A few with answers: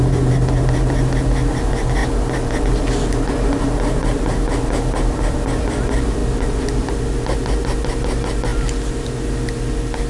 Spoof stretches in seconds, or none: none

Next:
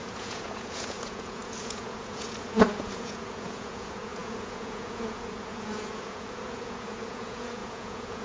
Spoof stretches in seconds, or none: 0.0-8.2 (vocoder, Vocos)

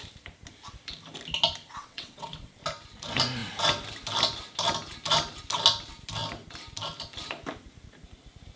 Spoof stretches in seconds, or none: 1.8-2.6 (vocoder, WaveNeXt)

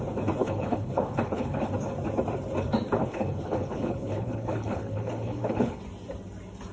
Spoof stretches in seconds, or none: 0.4-1.7 (codec, HILCodec); 3.0-5.8

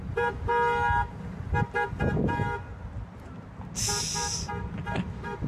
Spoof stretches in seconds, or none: none

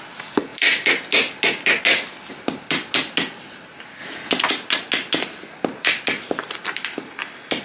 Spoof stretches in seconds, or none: 4.0-4.5 (vocoder, BigVGAN v2)

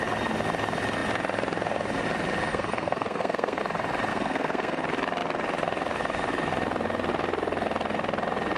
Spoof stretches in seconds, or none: 2.5-3.6 (codec, SNAC); 4.1-4.8